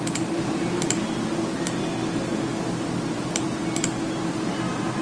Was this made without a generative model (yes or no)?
yes